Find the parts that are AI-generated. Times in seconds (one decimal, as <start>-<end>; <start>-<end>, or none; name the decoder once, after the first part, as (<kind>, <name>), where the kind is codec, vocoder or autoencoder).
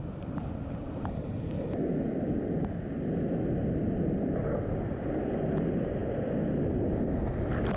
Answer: none